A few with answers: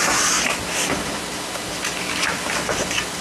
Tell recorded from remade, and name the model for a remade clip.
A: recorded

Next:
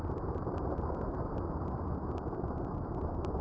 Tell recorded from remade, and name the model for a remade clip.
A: recorded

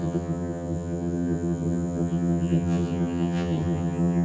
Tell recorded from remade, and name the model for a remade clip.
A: remade, vocoder, HiFi-GAN